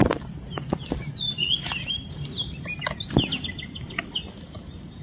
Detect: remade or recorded remade